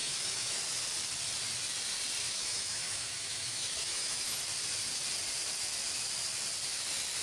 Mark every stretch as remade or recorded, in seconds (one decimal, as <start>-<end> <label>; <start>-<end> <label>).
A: 0.0-0.6 remade; 0.6-2.2 recorded; 2.2-4.4 remade; 4.4-7.2 recorded